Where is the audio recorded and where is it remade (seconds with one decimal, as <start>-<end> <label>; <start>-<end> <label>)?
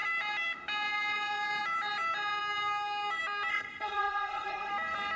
0.0-3.5 recorded; 3.5-4.7 remade; 4.7-5.2 recorded